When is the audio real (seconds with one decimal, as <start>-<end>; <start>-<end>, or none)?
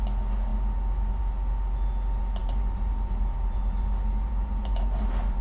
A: 0.0-2.4